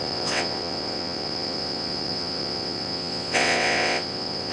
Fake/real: fake